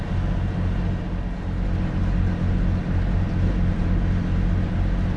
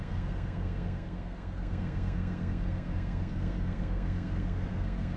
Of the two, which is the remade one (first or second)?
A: second